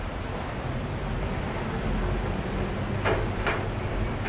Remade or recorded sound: recorded